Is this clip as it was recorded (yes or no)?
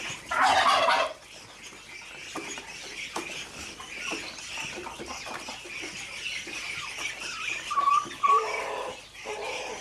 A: yes